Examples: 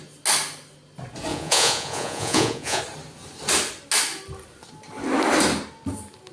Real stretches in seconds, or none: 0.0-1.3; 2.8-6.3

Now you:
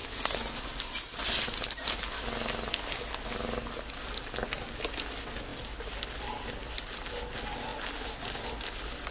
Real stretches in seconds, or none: 0.0-9.1

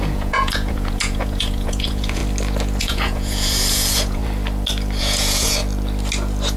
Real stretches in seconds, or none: 2.2-2.8; 4.2-5.0; 5.6-6.6

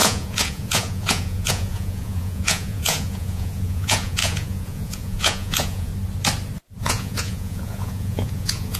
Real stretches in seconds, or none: 5.9-6.8

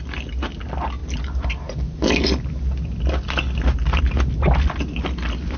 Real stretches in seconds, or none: 0.0-5.6

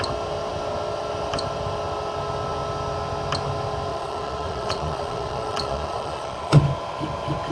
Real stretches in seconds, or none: 0.0-3.9; 6.6-7.5

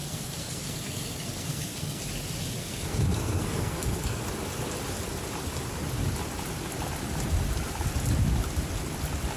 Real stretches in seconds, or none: 2.0-2.6; 4.2-9.4

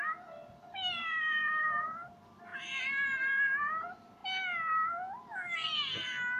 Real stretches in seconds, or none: 4.2-6.4